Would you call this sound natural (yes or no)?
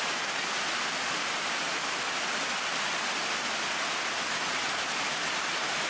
yes